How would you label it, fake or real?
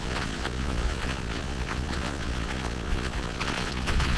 fake